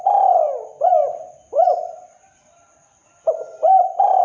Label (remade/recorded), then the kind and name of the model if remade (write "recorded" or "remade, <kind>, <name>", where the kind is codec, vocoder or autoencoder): recorded